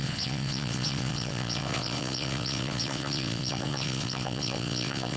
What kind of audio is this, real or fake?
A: fake